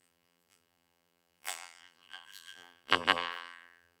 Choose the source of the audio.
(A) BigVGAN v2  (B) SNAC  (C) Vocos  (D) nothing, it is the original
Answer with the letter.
A